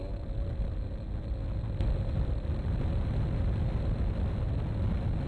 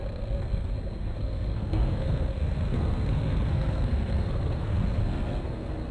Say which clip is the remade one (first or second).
second